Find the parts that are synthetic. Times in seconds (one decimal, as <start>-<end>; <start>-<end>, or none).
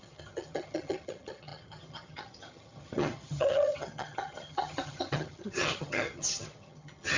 0.0-7.2